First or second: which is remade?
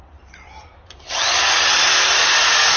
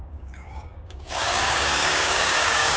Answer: second